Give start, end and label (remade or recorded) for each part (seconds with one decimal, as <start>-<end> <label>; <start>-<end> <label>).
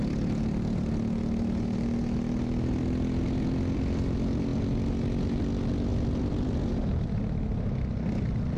0.0-5.9 recorded; 5.9-7.2 remade; 7.2-8.6 recorded